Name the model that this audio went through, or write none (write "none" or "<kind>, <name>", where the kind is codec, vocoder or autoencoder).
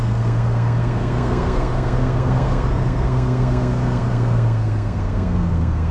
codec, SNAC